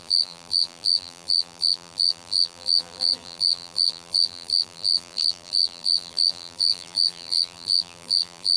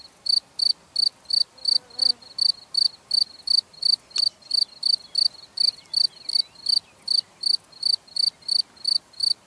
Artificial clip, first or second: first